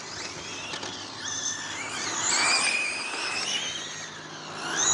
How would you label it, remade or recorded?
recorded